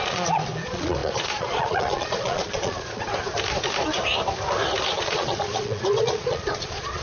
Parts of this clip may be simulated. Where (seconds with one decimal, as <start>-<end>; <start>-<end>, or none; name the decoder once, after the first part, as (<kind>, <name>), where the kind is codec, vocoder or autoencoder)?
0.0-3.1 (vocoder, Vocos); 5.0-7.0